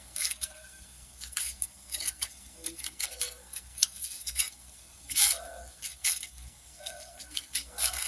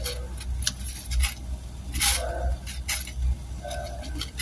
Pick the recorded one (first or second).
second